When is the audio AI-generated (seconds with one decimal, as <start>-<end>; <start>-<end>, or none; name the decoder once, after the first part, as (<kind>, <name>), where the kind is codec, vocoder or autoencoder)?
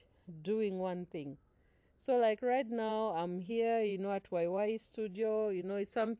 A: 3.9-6.2 (vocoder, Vocos)